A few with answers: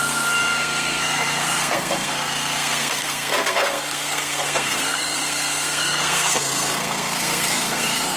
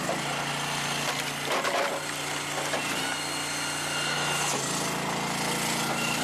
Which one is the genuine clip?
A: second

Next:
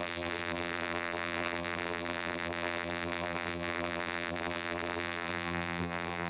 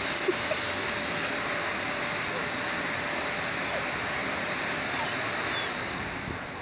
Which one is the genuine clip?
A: second